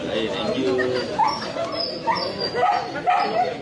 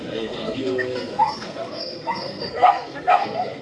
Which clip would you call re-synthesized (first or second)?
second